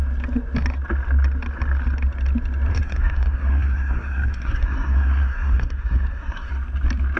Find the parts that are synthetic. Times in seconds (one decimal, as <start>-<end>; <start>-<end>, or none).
2.7-6.5